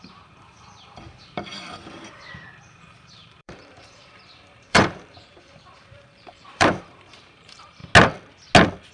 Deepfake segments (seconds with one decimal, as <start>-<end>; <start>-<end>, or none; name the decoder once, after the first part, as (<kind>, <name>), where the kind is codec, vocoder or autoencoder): 0.0-7.8 (vocoder, BigVGAN v2)